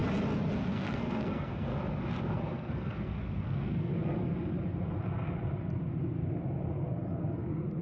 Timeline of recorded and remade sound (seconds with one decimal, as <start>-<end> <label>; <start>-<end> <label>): 0.0-0.7 recorded; 0.7-1.7 remade; 1.7-2.2 recorded; 2.2-3.9 remade; 3.9-7.8 recorded